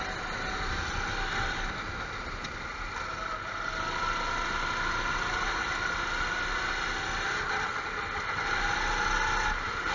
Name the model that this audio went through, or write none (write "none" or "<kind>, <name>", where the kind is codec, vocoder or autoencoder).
none